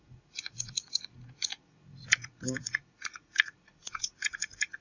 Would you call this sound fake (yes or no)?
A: yes